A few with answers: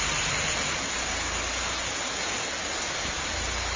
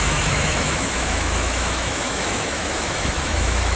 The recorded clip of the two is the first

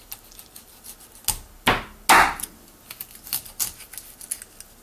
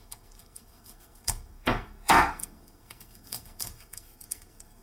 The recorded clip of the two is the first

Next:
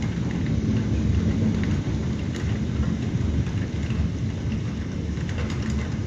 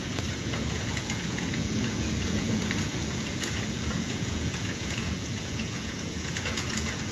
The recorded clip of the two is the first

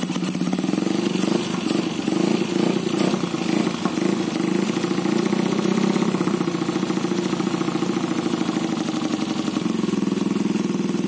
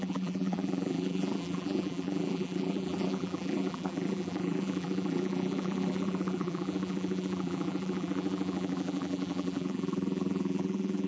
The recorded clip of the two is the first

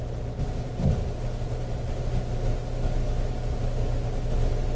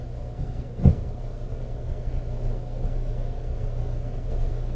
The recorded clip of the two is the first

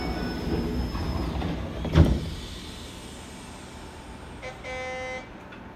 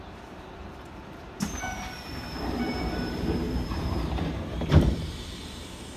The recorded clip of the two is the first